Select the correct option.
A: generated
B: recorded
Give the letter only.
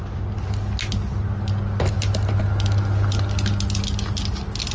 B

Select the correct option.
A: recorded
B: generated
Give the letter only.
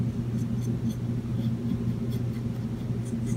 A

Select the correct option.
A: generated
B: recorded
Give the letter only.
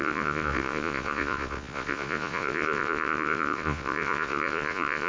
A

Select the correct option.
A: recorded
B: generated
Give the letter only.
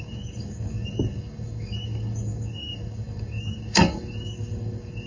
B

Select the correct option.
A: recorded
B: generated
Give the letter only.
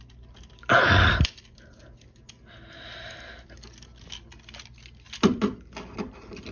A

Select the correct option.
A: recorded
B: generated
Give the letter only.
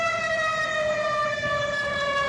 A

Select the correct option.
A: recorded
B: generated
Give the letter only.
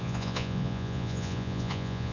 B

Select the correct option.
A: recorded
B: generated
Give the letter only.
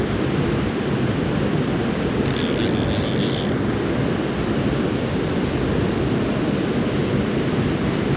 A